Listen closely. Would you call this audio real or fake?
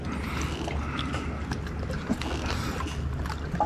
real